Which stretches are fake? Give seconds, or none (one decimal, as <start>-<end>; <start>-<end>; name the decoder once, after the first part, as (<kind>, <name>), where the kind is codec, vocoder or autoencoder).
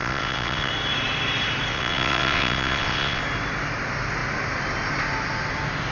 0.0-0.7 (vocoder, WaveNeXt); 1.7-3.2